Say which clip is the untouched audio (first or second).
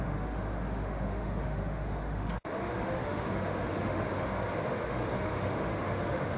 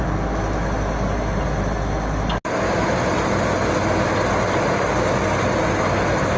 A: second